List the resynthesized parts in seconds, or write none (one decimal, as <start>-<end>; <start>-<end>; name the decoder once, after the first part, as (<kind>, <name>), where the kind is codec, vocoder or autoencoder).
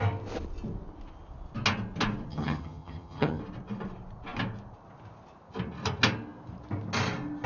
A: 2.3-3.4 (vocoder, HiFi-GAN)